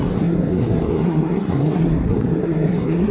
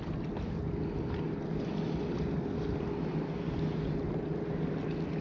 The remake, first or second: first